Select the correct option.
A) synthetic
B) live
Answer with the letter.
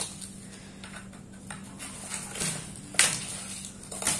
B